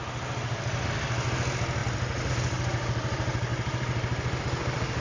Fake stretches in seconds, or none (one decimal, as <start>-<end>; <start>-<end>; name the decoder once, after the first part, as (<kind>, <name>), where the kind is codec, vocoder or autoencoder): 3.5-4.4 (vocoder, BigVGAN v2)